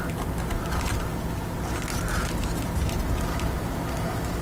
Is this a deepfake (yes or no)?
no